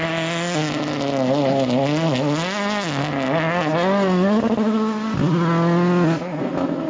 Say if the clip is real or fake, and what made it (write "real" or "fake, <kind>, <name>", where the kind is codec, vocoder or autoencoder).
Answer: real